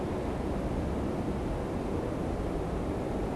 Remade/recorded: recorded